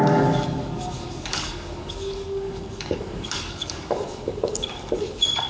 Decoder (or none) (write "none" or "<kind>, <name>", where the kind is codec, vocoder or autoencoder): codec, DAC